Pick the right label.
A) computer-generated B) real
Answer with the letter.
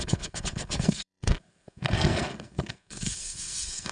A